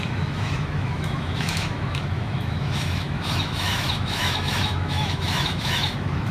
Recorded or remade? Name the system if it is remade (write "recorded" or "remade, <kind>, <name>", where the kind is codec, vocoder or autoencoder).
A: remade, autoencoder, DAC-VAE